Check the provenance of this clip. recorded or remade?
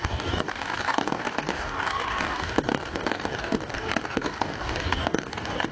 remade